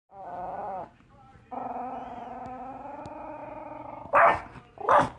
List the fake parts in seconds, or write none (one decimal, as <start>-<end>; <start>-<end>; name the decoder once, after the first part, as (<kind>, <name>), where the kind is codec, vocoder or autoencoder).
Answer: none